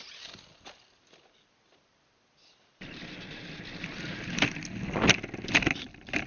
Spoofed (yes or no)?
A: no